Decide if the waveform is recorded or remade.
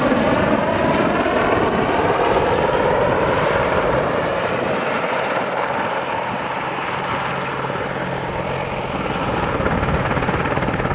recorded